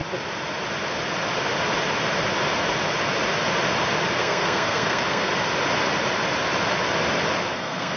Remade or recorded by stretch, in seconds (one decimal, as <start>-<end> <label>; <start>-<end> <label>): 0.0-4.2 recorded; 4.2-5.3 remade; 5.3-7.4 recorded; 7.4-8.0 remade